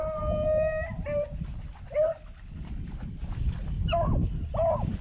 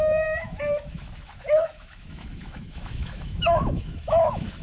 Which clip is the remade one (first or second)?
second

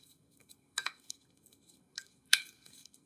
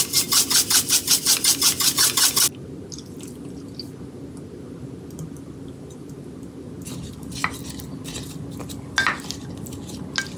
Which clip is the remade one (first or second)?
first